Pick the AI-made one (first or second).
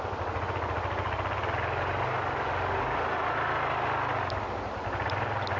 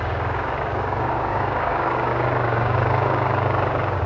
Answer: second